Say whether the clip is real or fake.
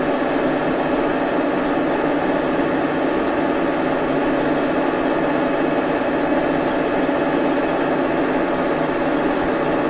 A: real